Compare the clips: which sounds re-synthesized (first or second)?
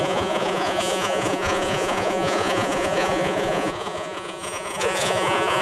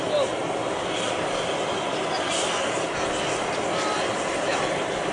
first